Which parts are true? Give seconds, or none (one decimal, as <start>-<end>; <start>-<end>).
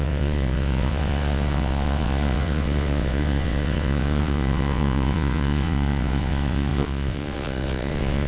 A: none